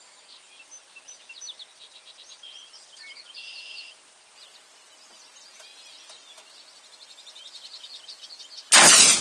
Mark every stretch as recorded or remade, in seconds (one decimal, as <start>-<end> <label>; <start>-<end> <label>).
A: 0.0-9.2 recorded